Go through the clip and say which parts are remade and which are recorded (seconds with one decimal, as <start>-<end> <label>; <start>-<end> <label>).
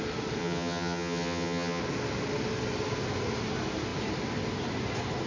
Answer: 0.0-0.4 recorded; 0.4-1.8 remade; 1.8-5.3 recorded